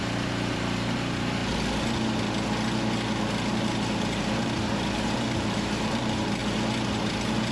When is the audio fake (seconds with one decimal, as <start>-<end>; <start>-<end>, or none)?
0.0-1.4; 3.5-6.4; 6.9-7.5